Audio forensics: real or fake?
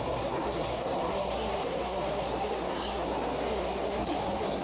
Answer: fake